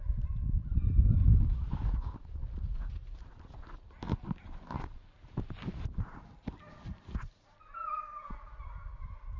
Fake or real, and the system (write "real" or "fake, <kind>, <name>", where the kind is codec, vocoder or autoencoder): real